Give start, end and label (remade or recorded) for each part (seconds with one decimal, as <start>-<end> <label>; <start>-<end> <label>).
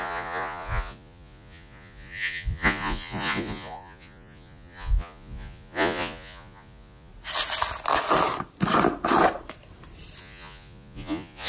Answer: 0.0-7.1 remade; 7.1-10.2 recorded; 10.2-11.5 remade